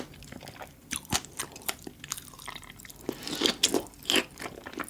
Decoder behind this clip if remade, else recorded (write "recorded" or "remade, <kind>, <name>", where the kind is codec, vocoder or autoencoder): recorded